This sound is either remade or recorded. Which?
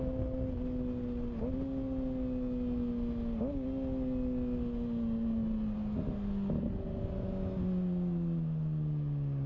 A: recorded